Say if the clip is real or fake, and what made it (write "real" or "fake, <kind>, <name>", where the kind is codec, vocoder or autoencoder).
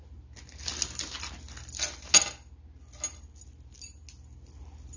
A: real